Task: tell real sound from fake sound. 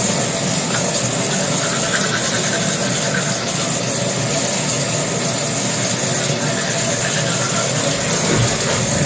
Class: real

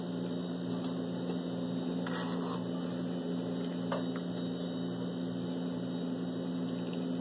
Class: real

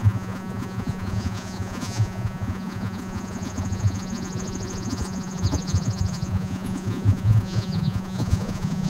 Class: fake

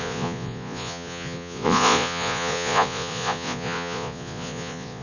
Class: fake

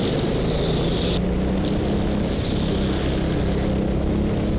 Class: real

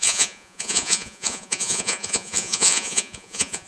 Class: fake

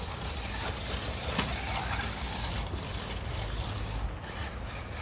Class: real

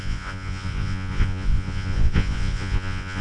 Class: fake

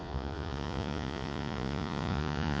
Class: fake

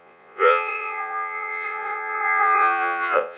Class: fake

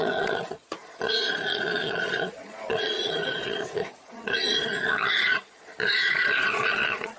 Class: fake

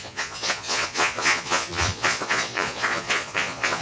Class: fake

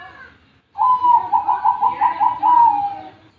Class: real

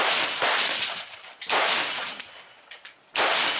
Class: real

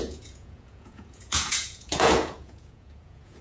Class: fake